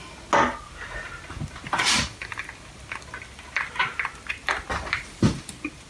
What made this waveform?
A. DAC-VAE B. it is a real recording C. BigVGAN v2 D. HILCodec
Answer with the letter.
B